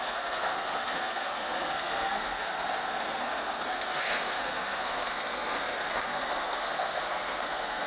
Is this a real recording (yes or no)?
no